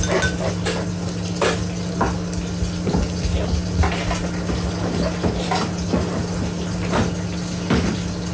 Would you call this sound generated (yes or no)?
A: no